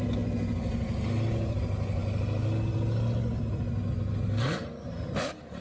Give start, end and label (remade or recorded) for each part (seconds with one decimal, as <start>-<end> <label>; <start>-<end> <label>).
0.0-5.6 recorded